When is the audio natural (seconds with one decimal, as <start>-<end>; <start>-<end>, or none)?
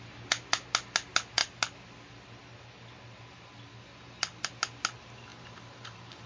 0.0-6.3